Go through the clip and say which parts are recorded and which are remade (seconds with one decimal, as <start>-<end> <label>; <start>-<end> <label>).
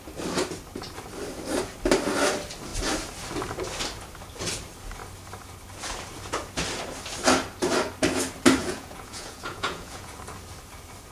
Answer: 0.0-8.6 recorded; 8.6-10.2 remade; 10.2-11.1 recorded